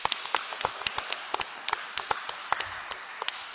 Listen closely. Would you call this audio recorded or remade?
recorded